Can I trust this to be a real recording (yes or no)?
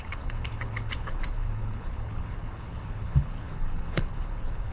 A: no